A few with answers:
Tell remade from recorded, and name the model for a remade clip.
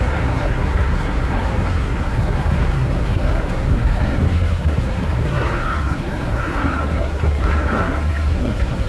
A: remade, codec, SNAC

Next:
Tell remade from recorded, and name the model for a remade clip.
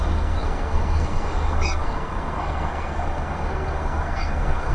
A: remade, codec, SNAC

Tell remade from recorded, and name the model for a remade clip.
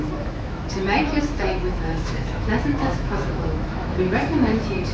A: remade, autoencoder, DAC-VAE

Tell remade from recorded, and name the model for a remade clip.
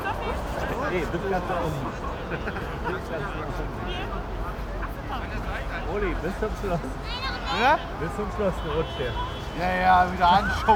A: recorded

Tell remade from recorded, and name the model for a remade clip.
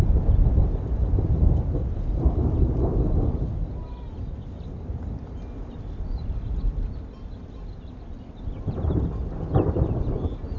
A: recorded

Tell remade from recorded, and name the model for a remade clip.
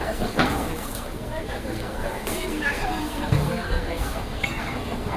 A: remade, codec, SNAC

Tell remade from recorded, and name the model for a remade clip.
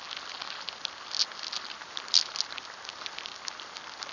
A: recorded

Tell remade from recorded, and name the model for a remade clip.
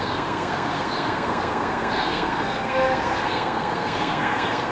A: remade, codec, SNAC